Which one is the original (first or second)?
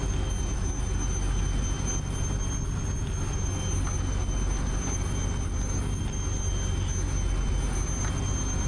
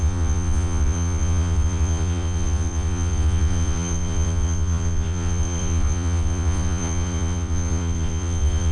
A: first